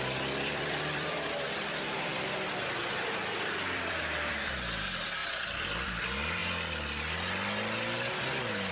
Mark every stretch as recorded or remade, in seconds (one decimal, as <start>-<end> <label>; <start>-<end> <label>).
0.0-5.2 remade; 5.2-5.9 recorded; 5.9-6.4 remade; 6.4-8.7 recorded